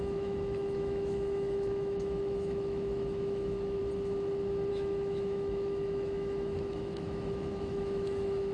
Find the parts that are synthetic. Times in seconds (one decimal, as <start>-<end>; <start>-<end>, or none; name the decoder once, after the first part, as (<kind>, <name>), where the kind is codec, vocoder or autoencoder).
0.0-3.8 (autoencoder, DAC-VAE); 4.7-8.5